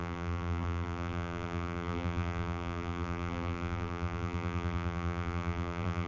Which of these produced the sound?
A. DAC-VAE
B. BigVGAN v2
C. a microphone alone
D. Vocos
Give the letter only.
B